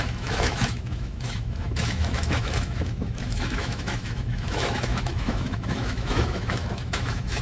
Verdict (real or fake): fake